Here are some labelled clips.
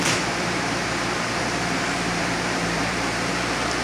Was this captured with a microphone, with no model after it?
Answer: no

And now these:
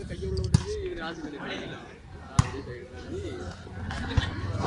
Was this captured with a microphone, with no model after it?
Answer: yes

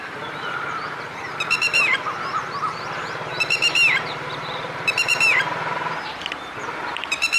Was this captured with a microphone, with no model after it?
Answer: no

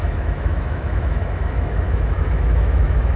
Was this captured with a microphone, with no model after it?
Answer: no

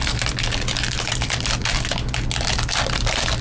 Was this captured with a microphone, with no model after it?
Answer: yes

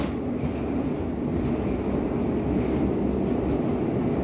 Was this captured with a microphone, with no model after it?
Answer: yes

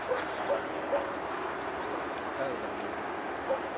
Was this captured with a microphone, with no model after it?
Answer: yes